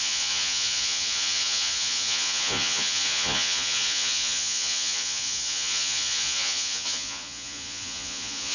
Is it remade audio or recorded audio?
remade